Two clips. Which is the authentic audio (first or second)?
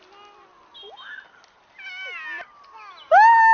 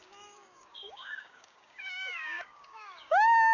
first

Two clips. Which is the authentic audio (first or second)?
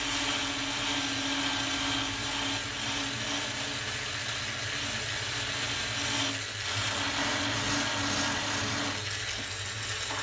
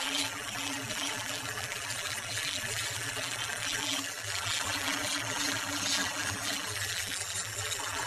first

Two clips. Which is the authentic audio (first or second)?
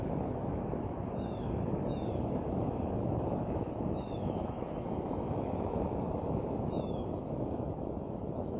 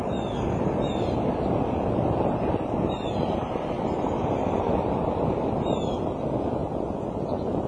second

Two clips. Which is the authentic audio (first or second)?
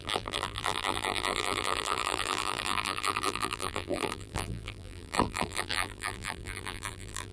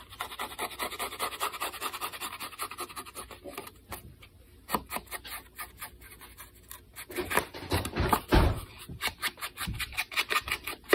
second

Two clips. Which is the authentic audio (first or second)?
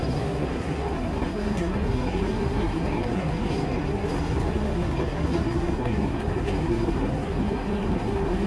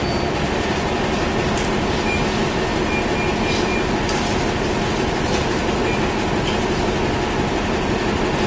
second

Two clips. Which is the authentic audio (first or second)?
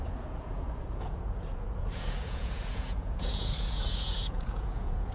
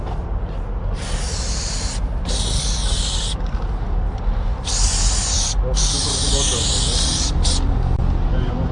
second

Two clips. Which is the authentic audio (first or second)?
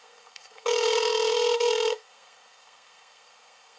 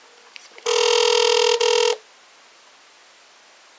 second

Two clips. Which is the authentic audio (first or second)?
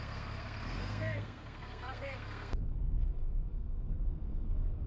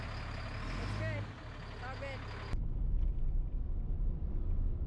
second